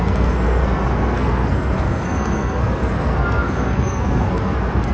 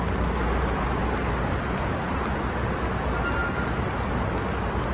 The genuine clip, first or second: second